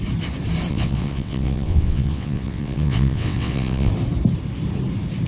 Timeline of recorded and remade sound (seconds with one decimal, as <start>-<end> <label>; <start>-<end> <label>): 0.0-0.7 recorded; 0.7-3.9 remade; 3.9-5.3 recorded